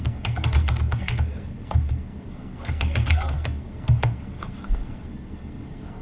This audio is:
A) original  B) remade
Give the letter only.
B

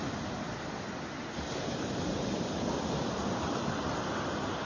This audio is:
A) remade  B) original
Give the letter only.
A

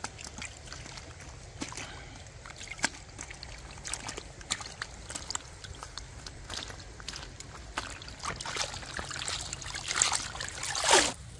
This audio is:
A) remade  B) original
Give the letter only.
B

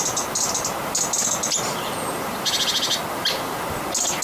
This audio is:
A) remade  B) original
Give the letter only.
B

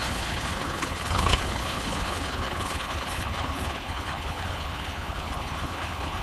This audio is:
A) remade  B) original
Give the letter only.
A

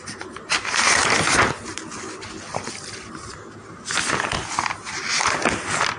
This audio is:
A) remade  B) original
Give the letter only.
B